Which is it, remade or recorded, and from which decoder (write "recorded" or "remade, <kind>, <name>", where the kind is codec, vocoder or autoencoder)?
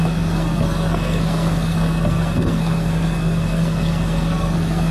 remade, codec, SNAC